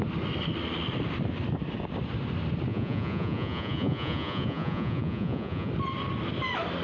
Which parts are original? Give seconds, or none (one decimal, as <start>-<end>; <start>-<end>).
0.0-2.7; 5.7-6.8